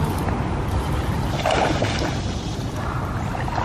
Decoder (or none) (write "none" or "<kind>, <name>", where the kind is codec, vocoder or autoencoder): none